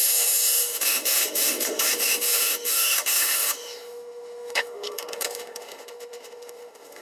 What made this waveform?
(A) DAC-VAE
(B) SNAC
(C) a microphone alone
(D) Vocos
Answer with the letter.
A